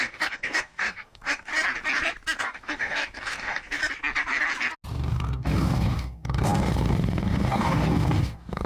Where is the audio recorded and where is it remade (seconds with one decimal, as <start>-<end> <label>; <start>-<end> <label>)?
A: 0.0-1.5 remade; 1.5-2.4 recorded; 2.4-3.8 remade; 3.8-4.9 recorded; 4.9-8.7 remade